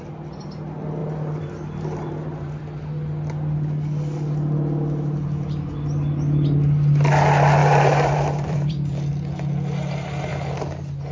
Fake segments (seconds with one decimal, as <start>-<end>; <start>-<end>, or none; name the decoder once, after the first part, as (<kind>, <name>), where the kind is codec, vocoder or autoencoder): 1.0-2.5 (vocoder, BigVGAN v2); 7.6-9.1